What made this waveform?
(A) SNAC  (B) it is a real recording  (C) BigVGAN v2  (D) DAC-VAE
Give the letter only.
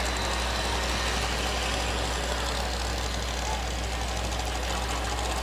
B